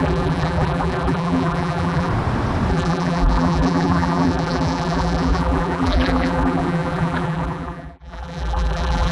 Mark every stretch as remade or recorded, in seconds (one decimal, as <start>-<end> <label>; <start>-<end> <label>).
0.0-2.1 remade; 2.1-2.7 recorded; 2.7-9.1 remade